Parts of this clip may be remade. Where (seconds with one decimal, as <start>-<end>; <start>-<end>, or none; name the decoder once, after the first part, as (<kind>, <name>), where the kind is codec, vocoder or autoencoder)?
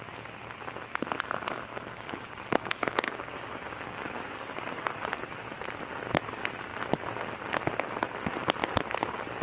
1.7-5.3 (codec, DAC)